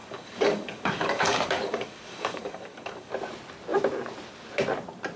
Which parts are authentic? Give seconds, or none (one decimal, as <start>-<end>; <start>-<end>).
3.1-5.2